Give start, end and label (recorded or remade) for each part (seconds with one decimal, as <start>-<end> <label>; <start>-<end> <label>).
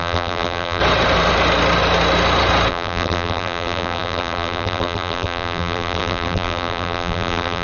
0.0-0.8 remade; 0.8-2.7 recorded; 2.7-7.6 remade